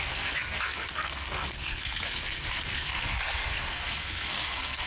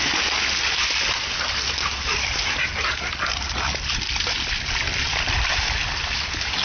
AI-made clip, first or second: first